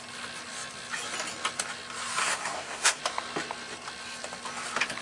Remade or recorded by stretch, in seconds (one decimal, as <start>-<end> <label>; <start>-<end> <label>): 0.0-2.2 recorded; 2.2-3.0 remade; 3.0-5.0 recorded